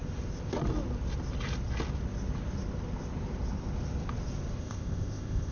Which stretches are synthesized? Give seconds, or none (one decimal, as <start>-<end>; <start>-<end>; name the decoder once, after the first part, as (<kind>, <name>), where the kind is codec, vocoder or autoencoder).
4.6-5.5 (codec, ZipCodec)